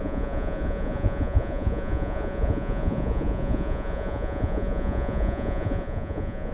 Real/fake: fake